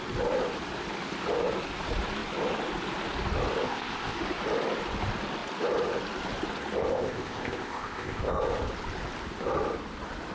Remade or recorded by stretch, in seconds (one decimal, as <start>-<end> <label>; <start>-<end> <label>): 0.0-3.6 recorded; 3.6-4.2 remade; 4.2-6.9 recorded; 6.9-8.4 remade; 8.4-10.3 recorded

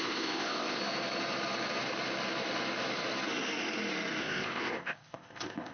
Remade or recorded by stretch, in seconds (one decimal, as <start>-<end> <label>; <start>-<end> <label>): 0.0-0.8 remade; 0.8-4.2 recorded; 4.2-5.7 remade

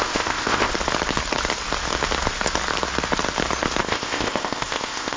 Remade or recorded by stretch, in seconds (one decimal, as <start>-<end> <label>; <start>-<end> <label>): 0.0-0.7 remade; 0.7-3.8 recorded; 3.8-5.2 remade

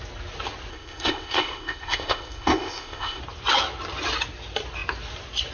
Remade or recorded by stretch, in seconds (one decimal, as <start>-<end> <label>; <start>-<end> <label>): 0.0-0.7 recorded; 0.7-3.2 remade; 3.2-5.5 recorded

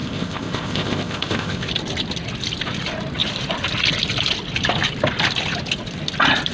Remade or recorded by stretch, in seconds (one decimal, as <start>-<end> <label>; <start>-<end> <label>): 0.0-1.7 remade; 1.7-6.5 recorded

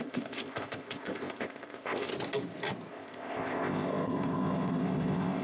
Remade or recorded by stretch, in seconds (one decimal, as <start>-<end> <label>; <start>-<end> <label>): 0.0-2.1 remade; 2.1-2.9 recorded; 2.9-5.4 remade

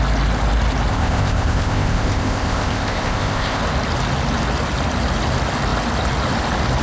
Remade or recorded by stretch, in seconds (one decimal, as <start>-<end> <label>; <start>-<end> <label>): 0.0-0.9 recorded; 0.9-3.6 remade; 3.6-6.8 recorded

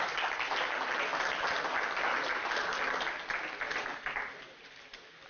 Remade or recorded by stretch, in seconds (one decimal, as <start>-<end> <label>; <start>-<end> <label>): 0.0-5.3 recorded